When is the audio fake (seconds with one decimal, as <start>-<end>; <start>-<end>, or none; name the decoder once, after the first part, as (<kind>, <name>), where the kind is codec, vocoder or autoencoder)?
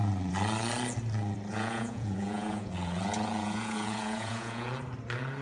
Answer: 1.5-4.7 (vocoder, Vocos)